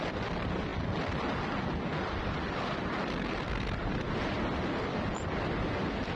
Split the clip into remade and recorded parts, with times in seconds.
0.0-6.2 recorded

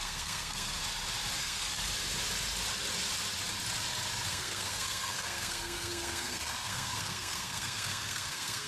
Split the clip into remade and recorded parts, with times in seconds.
0.0-0.8 remade; 0.8-1.4 recorded; 1.4-1.8 remade; 1.8-4.3 recorded; 4.3-8.7 remade